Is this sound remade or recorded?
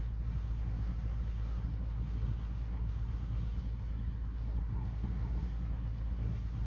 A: remade